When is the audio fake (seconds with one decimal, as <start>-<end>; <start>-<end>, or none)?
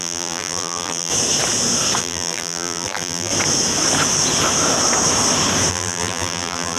0.0-1.1; 2.0-3.3; 5.7-6.8